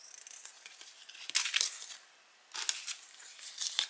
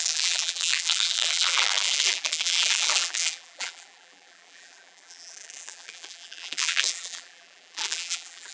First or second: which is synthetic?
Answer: second